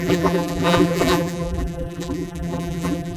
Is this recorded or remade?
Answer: remade